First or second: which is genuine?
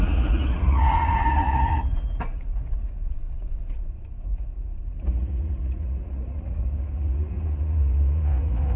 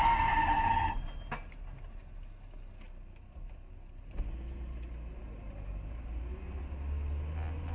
second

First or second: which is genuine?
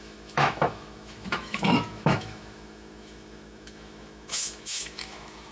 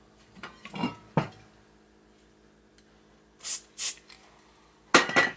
second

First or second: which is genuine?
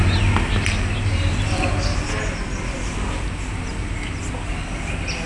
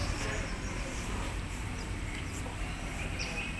first